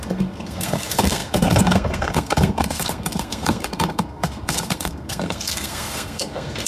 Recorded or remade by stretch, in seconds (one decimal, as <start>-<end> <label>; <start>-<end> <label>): 0.0-6.7 remade